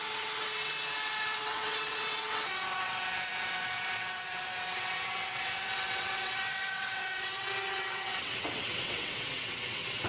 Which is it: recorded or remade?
remade